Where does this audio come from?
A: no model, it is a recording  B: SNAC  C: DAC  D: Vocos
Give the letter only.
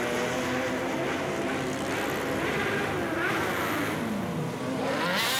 A